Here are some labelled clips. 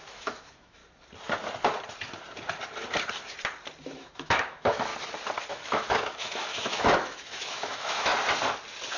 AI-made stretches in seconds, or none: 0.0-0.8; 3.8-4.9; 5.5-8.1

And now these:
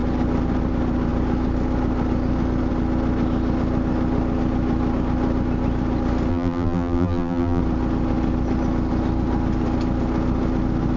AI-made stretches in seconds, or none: 6.3-7.6

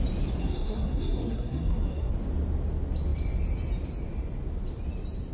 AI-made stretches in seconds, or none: 0.4-2.1

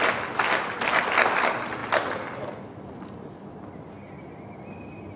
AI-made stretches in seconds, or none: none

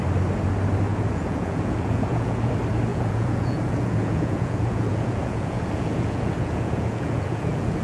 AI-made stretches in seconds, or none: 0.9-2.5; 2.9-7.8